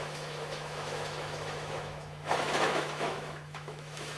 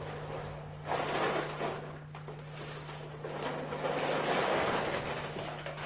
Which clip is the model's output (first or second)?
first